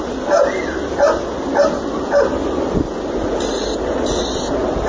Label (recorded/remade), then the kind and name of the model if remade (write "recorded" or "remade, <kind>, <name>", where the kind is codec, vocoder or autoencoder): recorded